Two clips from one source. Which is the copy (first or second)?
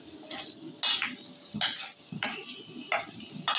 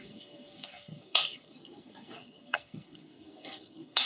second